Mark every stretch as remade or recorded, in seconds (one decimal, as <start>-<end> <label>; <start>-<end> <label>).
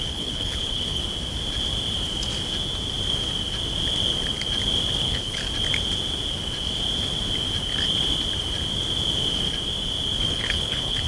0.0-1.0 remade; 1.0-5.0 recorded; 5.0-5.4 remade; 5.4-10.3 recorded; 10.3-11.1 remade